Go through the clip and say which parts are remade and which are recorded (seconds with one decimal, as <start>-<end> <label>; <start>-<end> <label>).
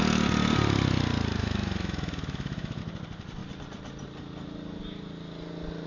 0.0-1.4 recorded; 1.4-2.8 remade; 2.8-5.9 recorded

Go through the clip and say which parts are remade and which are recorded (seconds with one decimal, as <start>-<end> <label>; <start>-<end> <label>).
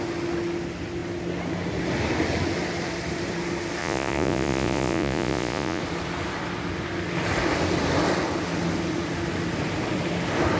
0.0-3.8 recorded; 3.8-5.8 remade; 5.8-10.6 recorded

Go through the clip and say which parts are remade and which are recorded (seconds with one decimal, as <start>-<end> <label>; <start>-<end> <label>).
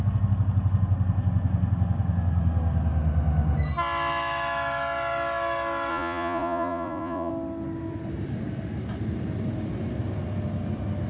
0.0-5.9 recorded; 5.9-7.3 remade; 7.3-11.1 recorded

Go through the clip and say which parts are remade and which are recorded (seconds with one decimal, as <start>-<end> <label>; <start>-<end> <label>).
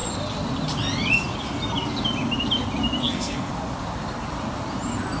0.0-3.0 recorded; 3.0-3.5 remade; 3.5-5.2 recorded